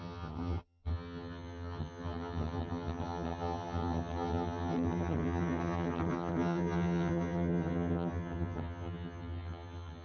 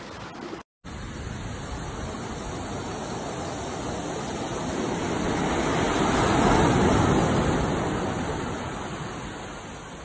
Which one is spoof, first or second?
first